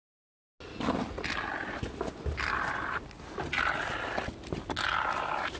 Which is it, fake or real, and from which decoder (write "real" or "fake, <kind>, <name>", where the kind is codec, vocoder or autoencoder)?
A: real